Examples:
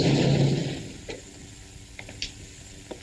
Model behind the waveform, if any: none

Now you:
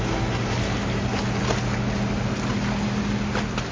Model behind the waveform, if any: none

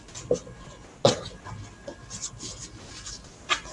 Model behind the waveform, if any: none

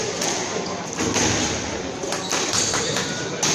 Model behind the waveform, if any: none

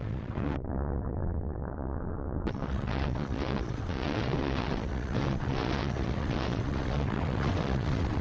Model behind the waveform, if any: vocoder, WaveNeXt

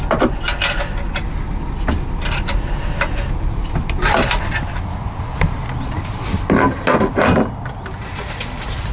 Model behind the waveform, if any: none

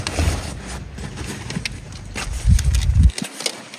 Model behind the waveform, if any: none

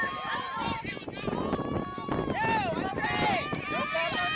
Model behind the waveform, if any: none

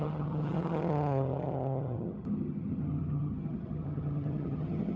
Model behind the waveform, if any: vocoder, HiFi-GAN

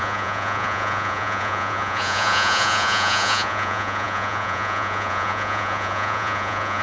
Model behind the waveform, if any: vocoder, Vocos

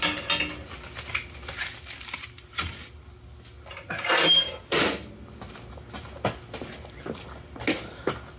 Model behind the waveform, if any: none